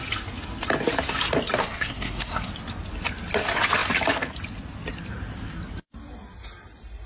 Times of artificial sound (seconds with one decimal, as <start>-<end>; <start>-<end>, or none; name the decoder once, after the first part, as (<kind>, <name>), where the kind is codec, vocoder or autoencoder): 1.6-2.5 (codec, SNAC)